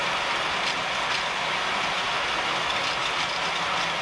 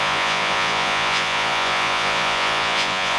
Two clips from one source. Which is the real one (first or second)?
first